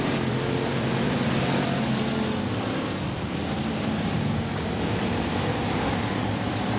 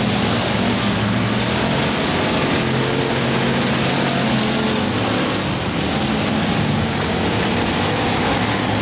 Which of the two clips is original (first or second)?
second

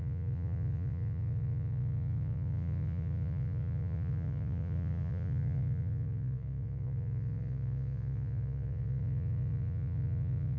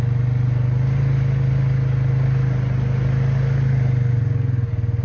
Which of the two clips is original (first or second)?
second